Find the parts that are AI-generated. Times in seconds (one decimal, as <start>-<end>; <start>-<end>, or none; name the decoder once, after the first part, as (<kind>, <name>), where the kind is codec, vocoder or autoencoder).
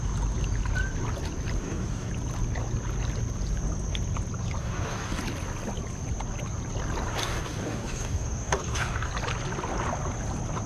1.6-2.1 (codec, DAC); 4.6-5.2; 7.2-9.1